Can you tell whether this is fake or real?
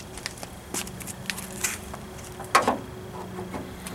real